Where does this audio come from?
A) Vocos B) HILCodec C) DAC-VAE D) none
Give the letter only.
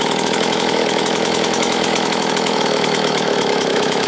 C